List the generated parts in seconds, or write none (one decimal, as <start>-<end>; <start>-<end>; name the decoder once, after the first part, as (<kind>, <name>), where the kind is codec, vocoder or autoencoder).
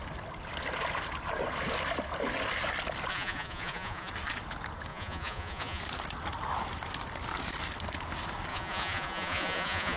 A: 3.1-4.1 (vocoder, Vocos); 4.9-5.8; 8.5-10.0